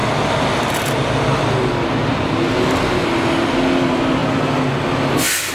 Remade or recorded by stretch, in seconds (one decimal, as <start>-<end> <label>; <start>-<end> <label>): 0.0-5.5 recorded

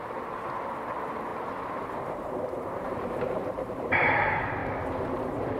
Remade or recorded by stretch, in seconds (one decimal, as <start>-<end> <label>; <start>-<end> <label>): 0.0-5.6 remade

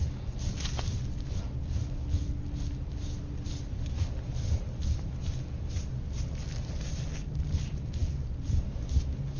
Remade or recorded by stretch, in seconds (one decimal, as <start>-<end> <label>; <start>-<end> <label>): 0.0-9.4 recorded